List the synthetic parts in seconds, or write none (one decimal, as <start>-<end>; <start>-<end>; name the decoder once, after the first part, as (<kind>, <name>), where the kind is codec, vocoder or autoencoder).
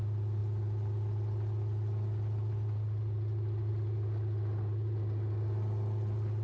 none